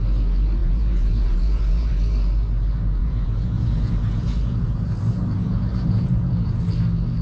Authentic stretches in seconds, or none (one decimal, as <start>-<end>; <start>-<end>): 0.0-0.6; 1.9-3.0; 5.0-5.4; 6.6-7.2